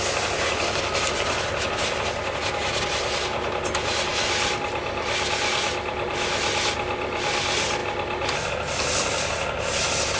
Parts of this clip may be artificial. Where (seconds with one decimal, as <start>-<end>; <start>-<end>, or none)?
none